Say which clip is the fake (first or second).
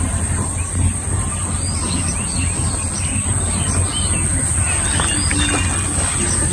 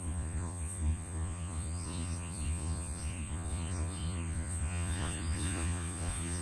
second